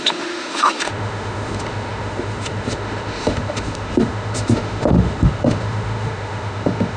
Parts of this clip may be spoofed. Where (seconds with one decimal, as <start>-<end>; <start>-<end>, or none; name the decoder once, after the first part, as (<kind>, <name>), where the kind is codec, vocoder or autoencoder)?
0.0-7.0 (autoencoder, DAC-VAE)